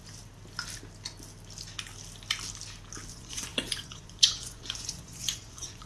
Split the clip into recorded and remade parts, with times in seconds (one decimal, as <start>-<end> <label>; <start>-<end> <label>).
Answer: 0.0-3.1 recorded; 3.1-5.9 remade